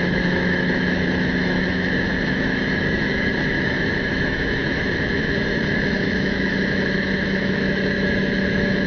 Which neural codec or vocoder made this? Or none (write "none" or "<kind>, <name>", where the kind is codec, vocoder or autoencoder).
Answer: autoencoder, DAC-VAE